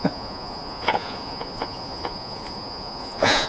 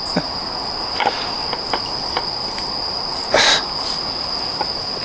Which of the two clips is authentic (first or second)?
second